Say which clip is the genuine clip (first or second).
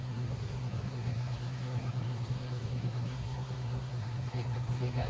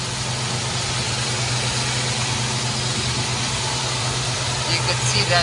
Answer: second